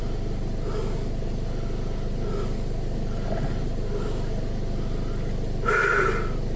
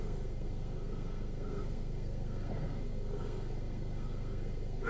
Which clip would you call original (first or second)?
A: first